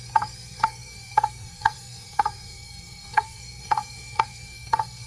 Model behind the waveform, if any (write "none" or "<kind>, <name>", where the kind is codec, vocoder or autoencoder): codec, SNAC